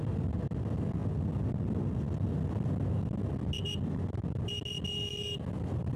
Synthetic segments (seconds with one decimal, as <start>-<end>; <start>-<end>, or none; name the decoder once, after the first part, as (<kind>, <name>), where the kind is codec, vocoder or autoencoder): none